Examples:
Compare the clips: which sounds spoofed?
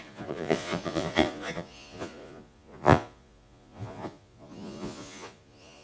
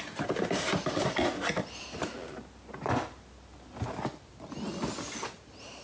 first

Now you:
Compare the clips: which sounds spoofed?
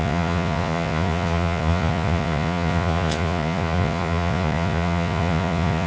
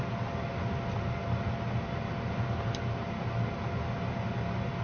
first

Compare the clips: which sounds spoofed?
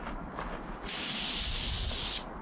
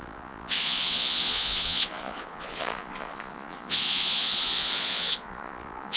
second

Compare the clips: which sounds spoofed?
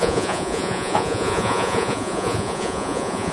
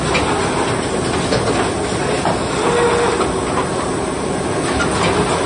first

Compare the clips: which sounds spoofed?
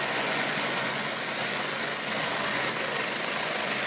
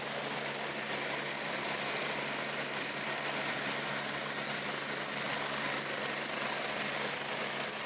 first